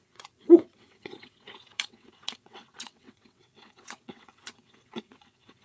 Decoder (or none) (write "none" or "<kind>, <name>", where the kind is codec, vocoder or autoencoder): vocoder, WaveNeXt